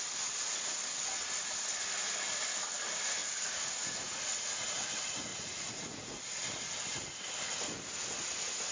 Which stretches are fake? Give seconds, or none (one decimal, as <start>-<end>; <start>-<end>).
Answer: 3.2-4.7; 5.3-6.2